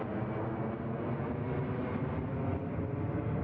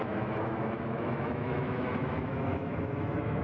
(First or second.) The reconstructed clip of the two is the second